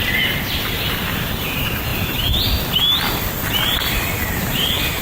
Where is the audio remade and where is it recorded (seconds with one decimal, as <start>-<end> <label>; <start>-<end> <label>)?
0.0-5.0 recorded